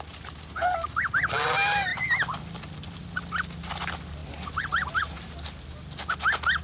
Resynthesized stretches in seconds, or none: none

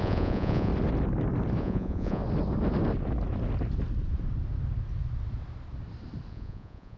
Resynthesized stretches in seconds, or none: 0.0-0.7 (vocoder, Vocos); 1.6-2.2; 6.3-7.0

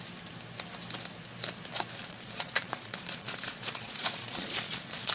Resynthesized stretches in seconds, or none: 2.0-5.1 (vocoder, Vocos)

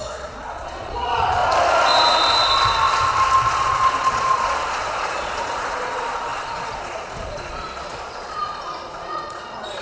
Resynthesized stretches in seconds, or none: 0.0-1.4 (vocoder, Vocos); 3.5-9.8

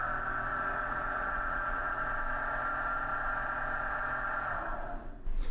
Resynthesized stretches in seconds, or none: 0.5-2.0 (vocoder, Vocos)

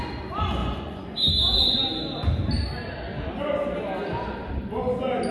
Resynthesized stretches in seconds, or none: 0.6-1.3 (vocoder, Vocos)

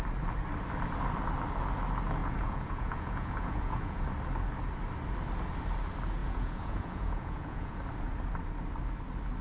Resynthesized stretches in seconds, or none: 2.2-4.0 (vocoder, Vocos); 6.2-7.8

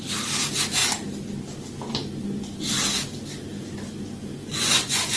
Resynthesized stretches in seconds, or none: 4.5-5.2 (vocoder, Vocos)